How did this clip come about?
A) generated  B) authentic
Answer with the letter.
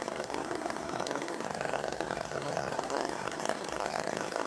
A